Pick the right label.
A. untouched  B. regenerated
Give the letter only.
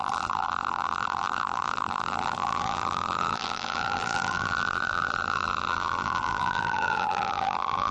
B